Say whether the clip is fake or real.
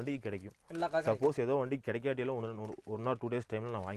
real